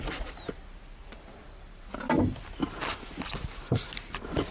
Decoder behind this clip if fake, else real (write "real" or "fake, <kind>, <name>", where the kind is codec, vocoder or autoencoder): real